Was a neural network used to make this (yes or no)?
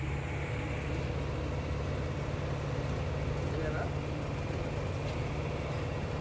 no